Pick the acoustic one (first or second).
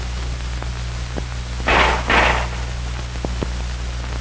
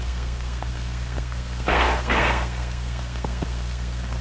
first